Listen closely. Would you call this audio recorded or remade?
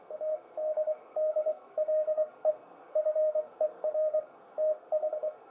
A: remade